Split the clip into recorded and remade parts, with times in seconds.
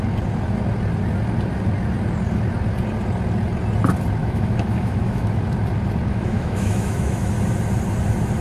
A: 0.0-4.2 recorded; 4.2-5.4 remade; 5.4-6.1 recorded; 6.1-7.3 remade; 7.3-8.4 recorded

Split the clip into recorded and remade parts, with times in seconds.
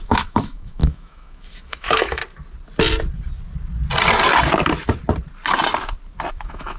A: 0.0-2.2 remade; 2.2-6.3 recorded; 6.3-6.8 remade